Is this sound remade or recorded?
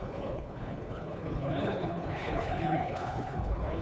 remade